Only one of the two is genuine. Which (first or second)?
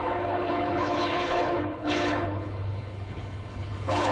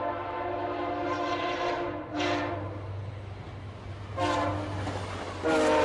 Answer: second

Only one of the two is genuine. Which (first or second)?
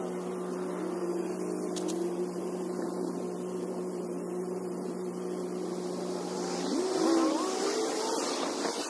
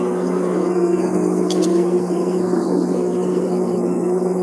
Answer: first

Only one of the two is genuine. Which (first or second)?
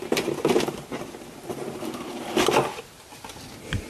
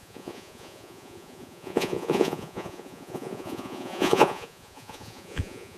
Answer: first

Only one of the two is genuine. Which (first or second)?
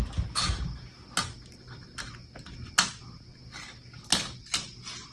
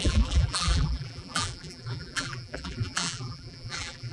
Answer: first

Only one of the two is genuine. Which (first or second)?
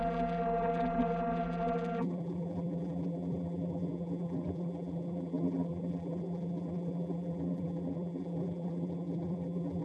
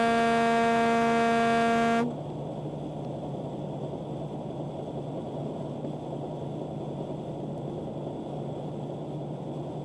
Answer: second